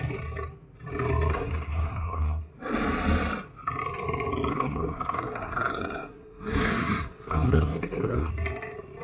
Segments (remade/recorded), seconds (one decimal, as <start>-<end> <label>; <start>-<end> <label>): 0.0-1.3 recorded; 1.3-2.5 remade; 2.5-4.5 recorded; 4.5-8.3 remade; 8.3-9.0 recorded